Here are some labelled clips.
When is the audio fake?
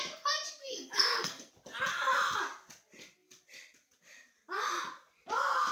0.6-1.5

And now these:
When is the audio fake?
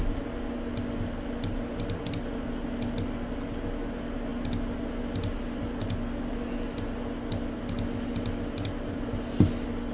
none